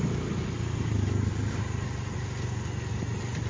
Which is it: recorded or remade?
recorded